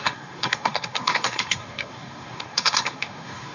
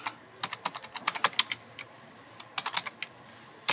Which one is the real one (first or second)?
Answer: second